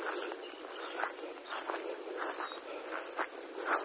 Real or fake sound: real